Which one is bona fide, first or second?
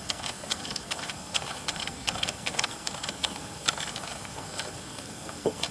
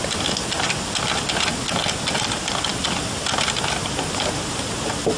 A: second